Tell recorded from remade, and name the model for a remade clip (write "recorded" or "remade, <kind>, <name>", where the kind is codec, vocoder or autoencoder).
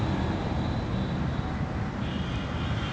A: recorded